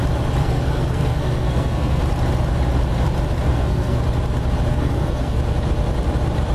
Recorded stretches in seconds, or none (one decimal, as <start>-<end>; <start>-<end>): 0.0-0.4; 2.0-3.5; 4.0-4.7; 5.4-6.5